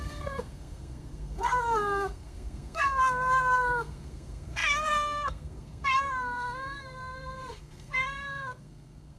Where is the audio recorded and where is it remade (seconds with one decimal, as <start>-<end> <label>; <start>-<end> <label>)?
0.0-9.2 remade